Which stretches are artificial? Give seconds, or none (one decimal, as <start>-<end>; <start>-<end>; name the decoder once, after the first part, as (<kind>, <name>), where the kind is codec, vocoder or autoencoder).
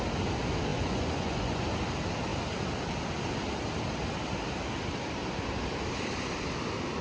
0.7-1.6 (vocoder, Vocos)